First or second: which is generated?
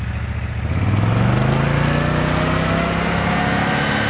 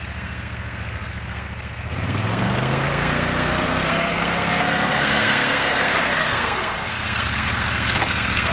second